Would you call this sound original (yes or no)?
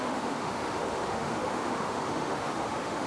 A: no